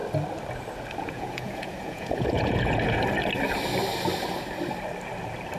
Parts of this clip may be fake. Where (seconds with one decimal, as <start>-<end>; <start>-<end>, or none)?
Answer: 1.0-3.0

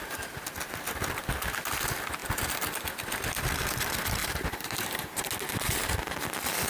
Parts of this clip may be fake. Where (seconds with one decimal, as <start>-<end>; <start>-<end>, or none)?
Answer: 4.2-5.1

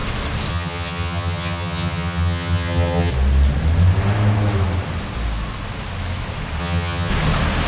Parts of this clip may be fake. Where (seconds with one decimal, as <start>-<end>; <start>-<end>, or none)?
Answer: 0.5-3.1; 6.6-7.1

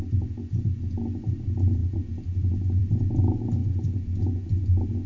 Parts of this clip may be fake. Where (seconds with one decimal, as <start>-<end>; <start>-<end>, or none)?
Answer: none

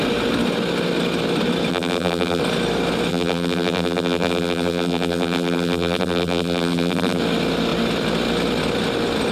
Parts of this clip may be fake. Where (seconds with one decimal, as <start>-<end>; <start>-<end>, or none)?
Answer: 1.7-2.4; 3.1-7.2

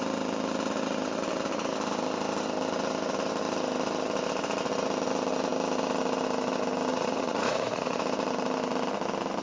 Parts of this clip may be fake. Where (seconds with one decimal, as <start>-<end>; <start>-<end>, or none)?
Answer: 6.9-8.0